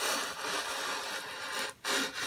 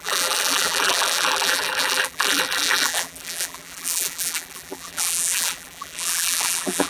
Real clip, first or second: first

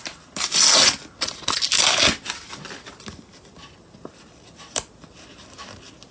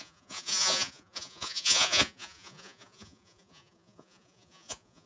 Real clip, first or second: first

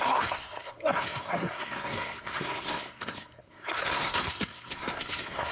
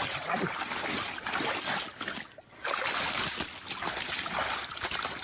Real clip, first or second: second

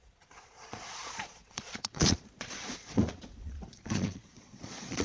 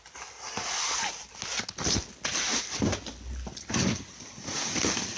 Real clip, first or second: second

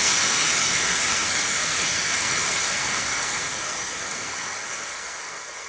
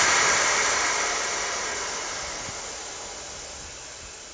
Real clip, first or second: second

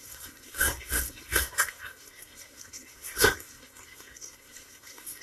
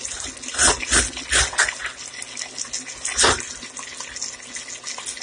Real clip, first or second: second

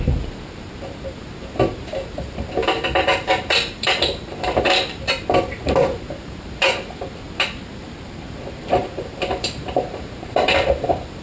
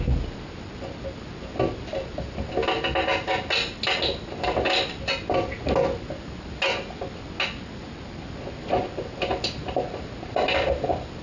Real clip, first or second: second